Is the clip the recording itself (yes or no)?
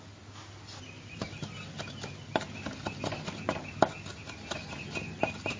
yes